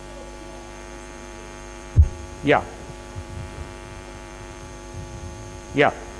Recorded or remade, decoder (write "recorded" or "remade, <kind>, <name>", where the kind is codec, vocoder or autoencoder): remade, vocoder, BigVGAN v2